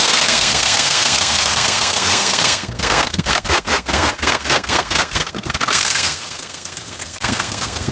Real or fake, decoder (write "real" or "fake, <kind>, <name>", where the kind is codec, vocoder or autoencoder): fake, codec, SNAC